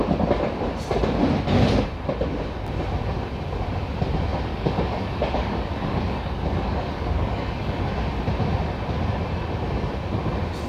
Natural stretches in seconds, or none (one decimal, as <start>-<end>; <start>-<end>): 0.0-4.5; 7.8-10.7